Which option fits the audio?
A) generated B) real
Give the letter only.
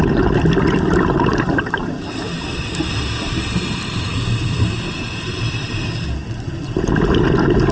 B